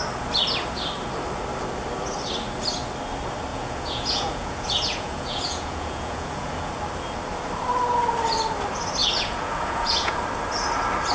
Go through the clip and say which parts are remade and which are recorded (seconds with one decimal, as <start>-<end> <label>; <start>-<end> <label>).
0.0-3.5 recorded; 3.5-6.7 remade; 6.7-9.0 recorded; 9.0-10.2 remade; 10.2-11.1 recorded